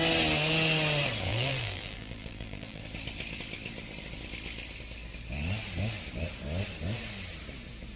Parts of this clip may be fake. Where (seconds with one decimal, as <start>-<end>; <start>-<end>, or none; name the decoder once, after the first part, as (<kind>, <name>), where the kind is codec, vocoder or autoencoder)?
1.3-2.8 (vocoder, BigVGAN v2)